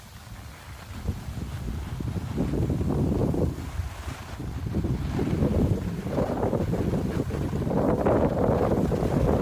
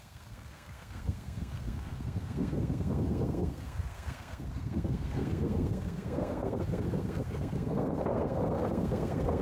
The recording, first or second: first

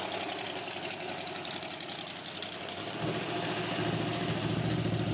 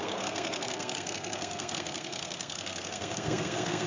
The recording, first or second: first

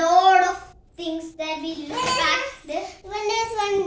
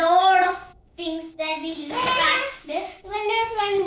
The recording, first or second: first